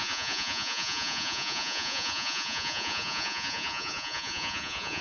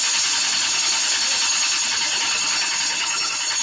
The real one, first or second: second